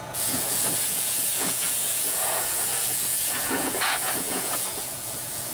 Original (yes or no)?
no